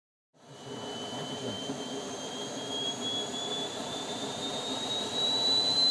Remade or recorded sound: remade